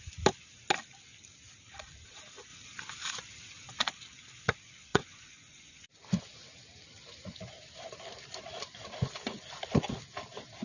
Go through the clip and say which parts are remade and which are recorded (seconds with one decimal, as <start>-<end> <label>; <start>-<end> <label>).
0.0-4.9 recorded; 4.9-5.9 remade; 5.9-10.6 recorded